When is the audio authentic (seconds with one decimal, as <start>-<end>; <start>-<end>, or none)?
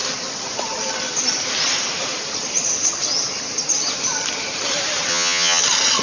0.0-5.1; 5.6-6.0